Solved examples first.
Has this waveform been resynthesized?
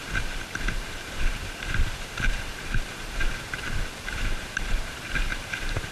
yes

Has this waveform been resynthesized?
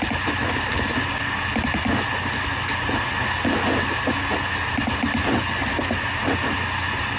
no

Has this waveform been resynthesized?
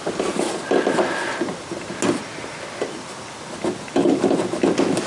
no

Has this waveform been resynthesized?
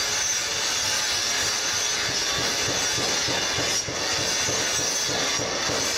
no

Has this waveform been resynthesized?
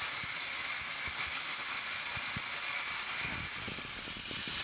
no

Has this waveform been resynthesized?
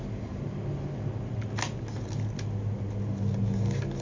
no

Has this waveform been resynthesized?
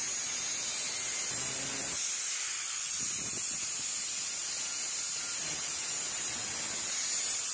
no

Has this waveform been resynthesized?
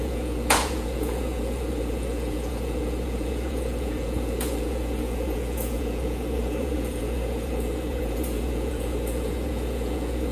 yes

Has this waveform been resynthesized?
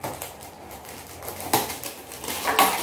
no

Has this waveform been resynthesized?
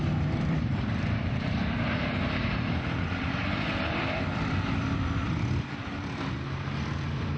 yes